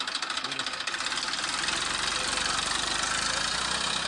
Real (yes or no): yes